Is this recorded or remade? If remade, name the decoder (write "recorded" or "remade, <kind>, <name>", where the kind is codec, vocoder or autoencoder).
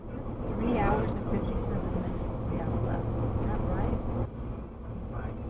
recorded